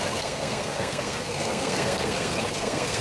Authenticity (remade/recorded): remade